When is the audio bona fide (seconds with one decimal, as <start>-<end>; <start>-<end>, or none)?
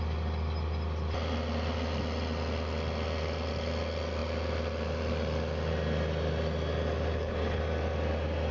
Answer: 0.0-7.1; 7.6-8.5